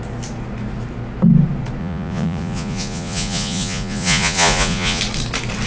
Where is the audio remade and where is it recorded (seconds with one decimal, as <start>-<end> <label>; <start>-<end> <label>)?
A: 0.0-1.8 recorded; 1.8-5.0 remade; 5.0-5.7 recorded

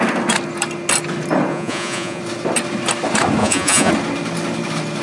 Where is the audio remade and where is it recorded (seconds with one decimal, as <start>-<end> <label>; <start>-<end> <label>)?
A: 0.0-1.5 recorded; 1.5-2.2 remade; 2.2-3.4 recorded; 3.4-3.9 remade; 3.9-5.0 recorded

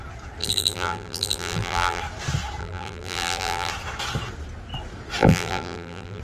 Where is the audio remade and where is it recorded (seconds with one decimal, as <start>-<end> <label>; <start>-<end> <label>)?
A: 0.0-0.4 recorded; 0.4-2.0 remade; 2.0-2.6 recorded; 2.6-3.7 remade; 3.7-5.2 recorded; 5.2-6.2 remade

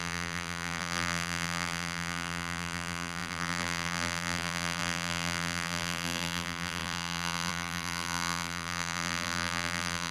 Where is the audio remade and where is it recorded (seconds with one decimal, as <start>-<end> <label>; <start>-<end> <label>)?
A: 0.0-10.1 remade

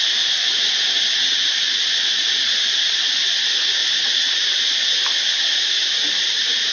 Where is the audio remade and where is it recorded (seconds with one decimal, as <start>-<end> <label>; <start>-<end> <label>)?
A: 0.0-6.7 recorded

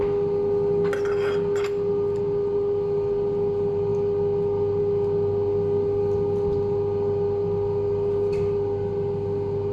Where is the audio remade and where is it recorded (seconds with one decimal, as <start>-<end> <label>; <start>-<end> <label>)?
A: 0.0-9.7 recorded